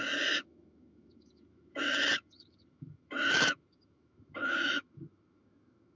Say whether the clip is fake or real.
fake